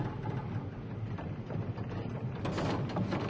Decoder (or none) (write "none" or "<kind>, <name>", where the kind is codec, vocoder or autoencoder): none